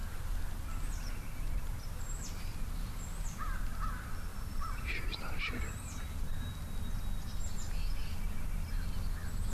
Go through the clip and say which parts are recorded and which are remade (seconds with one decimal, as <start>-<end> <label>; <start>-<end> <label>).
0.0-4.3 recorded; 4.3-6.4 remade; 6.4-9.5 recorded